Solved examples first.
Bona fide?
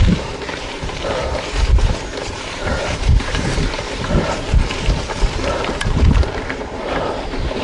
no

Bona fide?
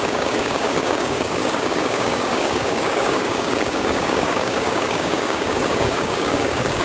no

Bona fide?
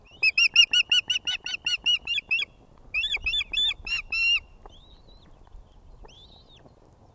yes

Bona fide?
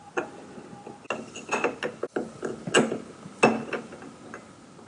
yes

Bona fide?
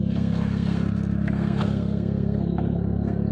no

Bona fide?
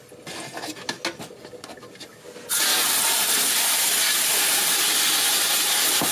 yes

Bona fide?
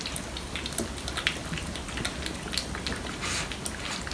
yes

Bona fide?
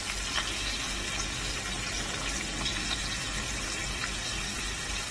yes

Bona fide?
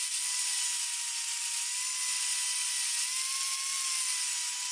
yes